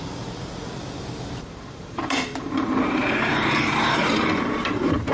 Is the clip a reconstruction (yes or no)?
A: yes